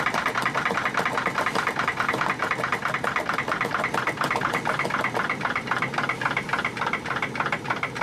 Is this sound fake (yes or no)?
no